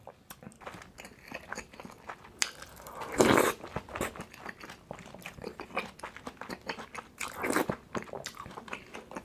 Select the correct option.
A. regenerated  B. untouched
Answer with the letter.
B